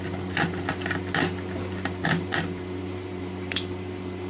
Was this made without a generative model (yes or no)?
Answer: no